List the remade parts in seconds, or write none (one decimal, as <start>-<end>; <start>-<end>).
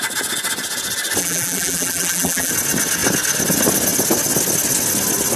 1.2-2.5